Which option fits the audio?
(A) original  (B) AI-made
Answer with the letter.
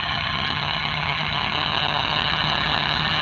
B